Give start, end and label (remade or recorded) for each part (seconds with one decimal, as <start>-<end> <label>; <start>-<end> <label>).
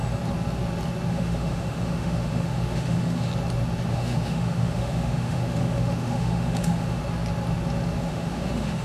0.0-1.1 recorded; 1.1-3.3 remade; 3.3-3.9 recorded; 3.9-7.0 remade; 7.0-8.0 recorded; 8.0-8.8 remade